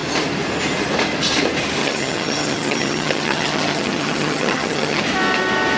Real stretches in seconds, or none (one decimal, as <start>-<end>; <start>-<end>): 0.0-1.8; 5.0-5.8